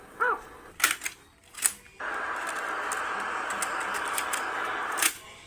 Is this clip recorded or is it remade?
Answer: recorded